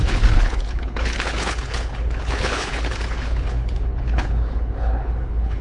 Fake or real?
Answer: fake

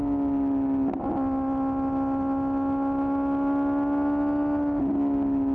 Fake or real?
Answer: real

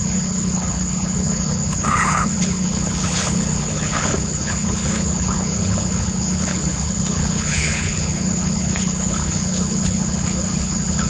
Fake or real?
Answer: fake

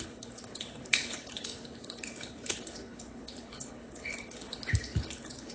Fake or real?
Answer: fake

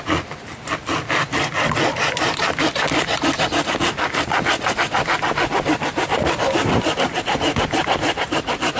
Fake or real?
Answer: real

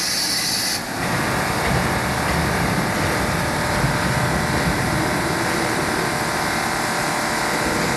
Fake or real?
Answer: real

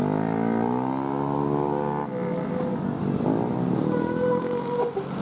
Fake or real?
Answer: real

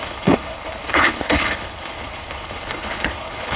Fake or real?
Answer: fake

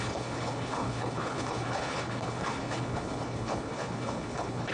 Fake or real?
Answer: fake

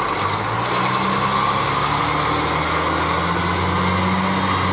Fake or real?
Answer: real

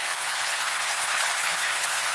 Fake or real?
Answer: fake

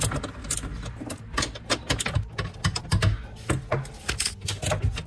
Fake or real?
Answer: real